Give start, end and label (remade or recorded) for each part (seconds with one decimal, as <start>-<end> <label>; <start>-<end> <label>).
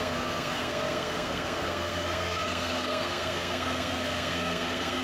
0.0-5.0 remade